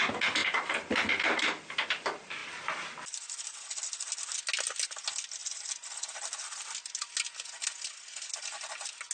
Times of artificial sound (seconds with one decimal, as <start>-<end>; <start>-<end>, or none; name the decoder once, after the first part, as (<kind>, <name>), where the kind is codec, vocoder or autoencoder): none